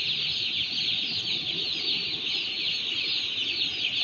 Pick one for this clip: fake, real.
real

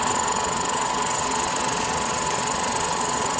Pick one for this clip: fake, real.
fake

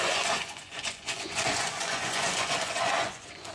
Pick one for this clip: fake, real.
fake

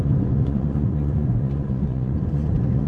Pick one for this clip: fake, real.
fake